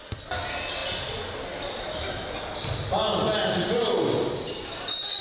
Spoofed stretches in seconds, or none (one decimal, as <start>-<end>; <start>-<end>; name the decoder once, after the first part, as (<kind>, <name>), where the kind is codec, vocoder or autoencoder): none